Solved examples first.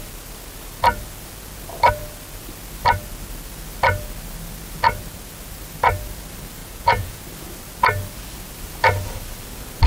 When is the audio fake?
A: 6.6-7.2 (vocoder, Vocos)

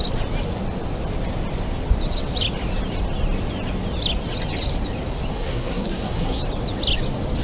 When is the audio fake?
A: 5.3-6.4 (codec, SNAC)

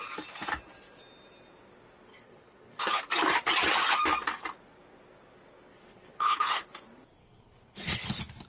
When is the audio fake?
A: 2.1-3.0 (codec, HILCodec); 5.7-6.6; 7.2-8.1

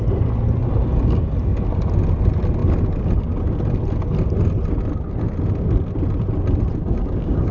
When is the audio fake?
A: 6.8-7.5 (codec, DAC)